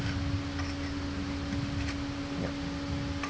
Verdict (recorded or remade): recorded